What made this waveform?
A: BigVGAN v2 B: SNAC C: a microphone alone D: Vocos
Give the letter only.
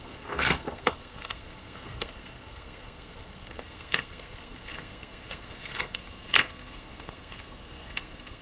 B